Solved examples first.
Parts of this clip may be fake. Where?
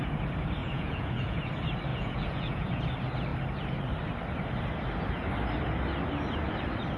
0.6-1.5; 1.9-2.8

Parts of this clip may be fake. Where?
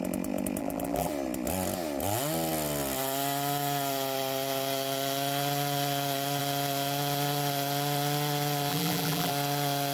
0.6-1.1; 8.7-9.3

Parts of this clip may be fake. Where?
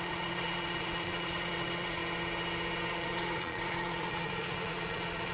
0.0-2.0; 2.9-5.3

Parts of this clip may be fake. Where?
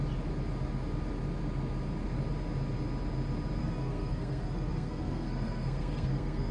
3.6-6.5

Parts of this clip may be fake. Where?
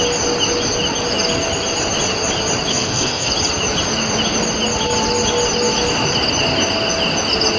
2.7-3.3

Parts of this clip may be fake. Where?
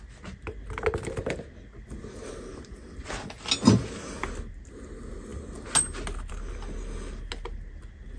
none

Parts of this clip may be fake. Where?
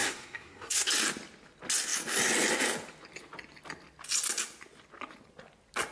0.0-0.9